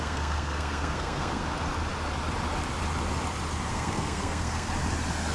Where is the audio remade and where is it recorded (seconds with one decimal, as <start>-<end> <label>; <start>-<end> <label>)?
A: 0.0-1.4 remade; 1.4-3.7 recorded; 3.7-4.7 remade; 4.7-5.3 recorded